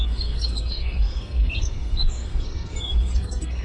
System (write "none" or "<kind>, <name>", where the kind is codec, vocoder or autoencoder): codec, SNAC